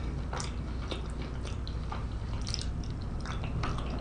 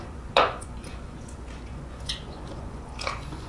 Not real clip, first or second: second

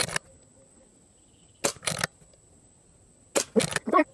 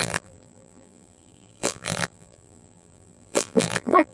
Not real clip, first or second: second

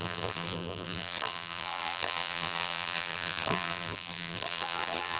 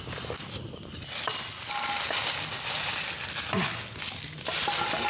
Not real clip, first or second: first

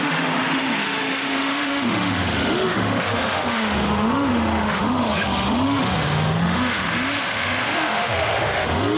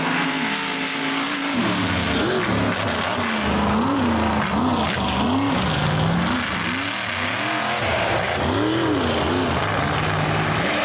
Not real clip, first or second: first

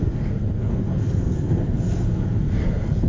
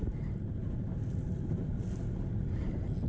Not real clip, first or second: first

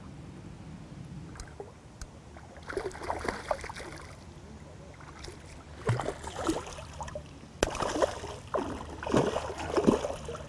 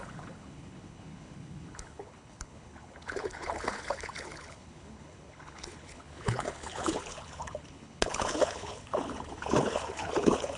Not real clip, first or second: second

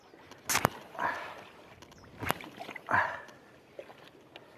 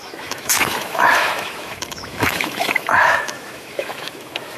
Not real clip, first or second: second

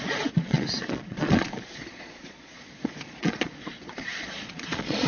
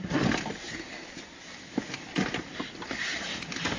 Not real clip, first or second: first